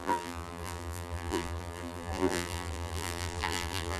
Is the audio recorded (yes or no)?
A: no